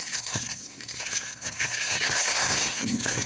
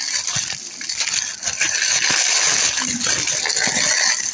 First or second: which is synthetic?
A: first